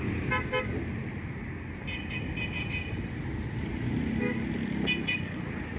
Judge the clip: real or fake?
real